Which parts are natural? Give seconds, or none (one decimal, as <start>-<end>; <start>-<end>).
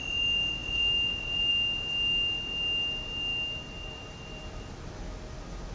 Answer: 0.0-0.6; 1.5-3.3; 4.4-5.7